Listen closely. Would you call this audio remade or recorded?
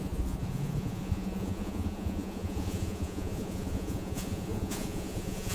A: remade